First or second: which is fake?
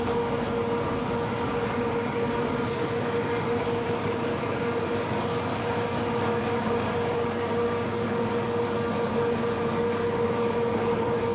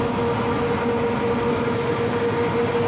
first